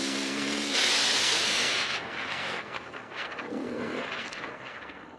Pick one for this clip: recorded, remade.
remade